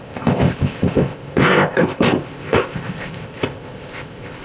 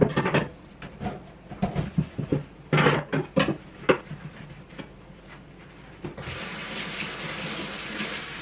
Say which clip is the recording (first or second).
second